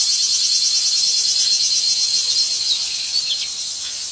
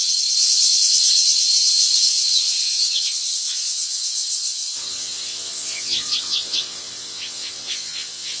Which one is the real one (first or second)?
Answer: first